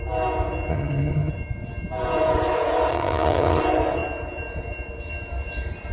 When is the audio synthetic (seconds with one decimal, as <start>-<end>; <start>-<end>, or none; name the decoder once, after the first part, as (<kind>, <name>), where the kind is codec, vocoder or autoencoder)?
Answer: 0.7-1.3 (vocoder, HiFi-GAN); 2.9-3.6